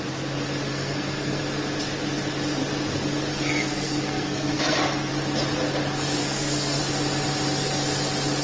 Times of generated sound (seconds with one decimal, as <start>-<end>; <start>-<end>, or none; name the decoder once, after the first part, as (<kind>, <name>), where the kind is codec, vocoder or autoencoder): 0.7-1.4 (codec, SNAC); 3.3-5.1; 6.2-6.8